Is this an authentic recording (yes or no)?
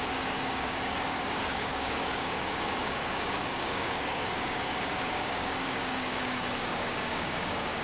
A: no